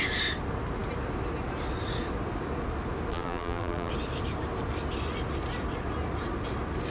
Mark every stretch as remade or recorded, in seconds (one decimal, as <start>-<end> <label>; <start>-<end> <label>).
0.0-3.1 recorded; 3.1-3.9 remade; 3.9-6.9 recorded

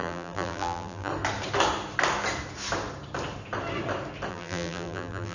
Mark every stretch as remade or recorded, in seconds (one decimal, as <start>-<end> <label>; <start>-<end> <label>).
0.0-1.1 remade; 1.1-4.3 recorded; 4.3-5.3 remade

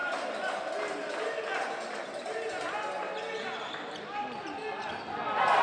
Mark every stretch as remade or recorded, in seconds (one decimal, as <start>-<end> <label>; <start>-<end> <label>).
0.0-0.7 remade; 0.7-5.6 recorded

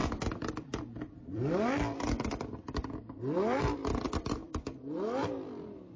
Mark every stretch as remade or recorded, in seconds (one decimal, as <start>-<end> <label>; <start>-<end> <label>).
0.0-3.6 remade; 3.6-4.4 recorded; 4.4-6.0 remade

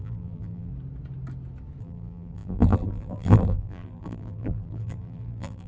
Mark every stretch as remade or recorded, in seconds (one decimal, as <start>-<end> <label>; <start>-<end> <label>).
0.0-0.7 remade; 0.7-1.8 recorded; 1.8-5.7 remade